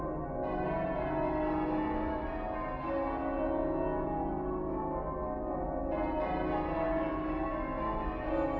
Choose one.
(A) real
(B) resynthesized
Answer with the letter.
A